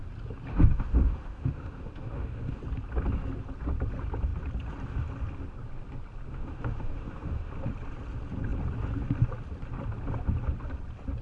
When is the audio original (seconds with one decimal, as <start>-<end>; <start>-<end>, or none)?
0.0-0.5; 2.6-6.3; 7.5-11.2